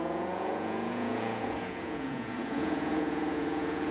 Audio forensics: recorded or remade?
remade